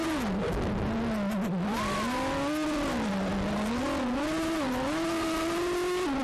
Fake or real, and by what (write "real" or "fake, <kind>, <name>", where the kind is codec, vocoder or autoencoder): real